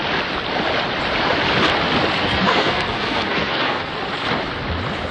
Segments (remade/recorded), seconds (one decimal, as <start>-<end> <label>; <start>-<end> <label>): 0.0-2.2 recorded; 2.2-3.9 remade; 3.9-5.1 recorded